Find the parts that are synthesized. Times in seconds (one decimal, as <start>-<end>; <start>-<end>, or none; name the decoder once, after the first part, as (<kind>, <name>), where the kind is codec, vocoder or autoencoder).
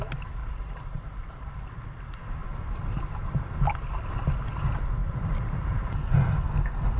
0.4-1.6 (vocoder, BigVGAN v2); 2.4-3.7; 5.0-5.9